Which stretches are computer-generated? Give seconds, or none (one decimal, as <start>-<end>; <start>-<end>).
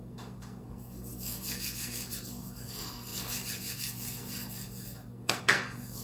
0.0-6.0